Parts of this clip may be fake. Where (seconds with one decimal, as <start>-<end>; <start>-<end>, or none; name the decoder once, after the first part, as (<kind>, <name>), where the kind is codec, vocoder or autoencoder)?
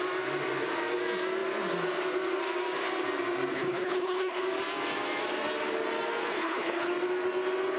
3.5-4.4 (codec, HILCodec); 6.2-6.9